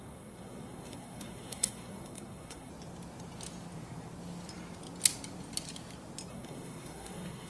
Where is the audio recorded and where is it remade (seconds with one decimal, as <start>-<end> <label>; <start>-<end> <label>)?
0.0-2.7 remade; 2.7-6.3 recorded; 6.3-7.5 remade